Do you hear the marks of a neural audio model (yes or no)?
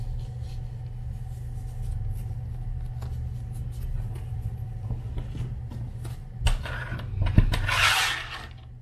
no